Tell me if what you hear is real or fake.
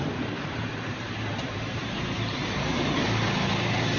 fake